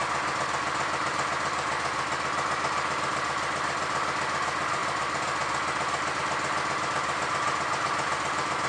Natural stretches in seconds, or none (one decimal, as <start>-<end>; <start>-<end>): 0.0-8.7